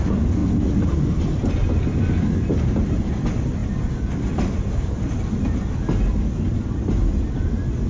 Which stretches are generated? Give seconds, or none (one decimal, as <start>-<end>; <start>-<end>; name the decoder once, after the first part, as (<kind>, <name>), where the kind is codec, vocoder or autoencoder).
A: none

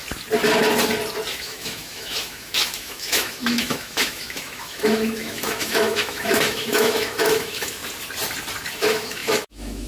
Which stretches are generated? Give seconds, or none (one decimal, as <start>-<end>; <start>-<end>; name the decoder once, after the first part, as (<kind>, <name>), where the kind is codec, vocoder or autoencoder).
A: 1.3-7.8 (autoencoder, DAC-VAE); 8.7-9.9

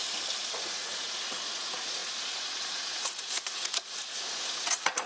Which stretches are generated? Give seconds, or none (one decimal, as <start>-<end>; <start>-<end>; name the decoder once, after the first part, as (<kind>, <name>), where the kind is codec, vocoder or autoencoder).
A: 0.5-5.1 (vocoder, Vocos)